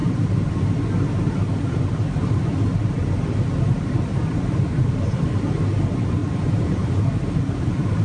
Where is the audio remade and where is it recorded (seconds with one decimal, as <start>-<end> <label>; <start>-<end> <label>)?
0.0-0.5 remade; 0.5-3.7 recorded; 3.7-5.5 remade; 5.5-6.2 recorded; 6.2-8.0 remade